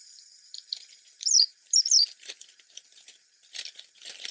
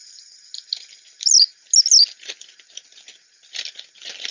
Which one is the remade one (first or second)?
first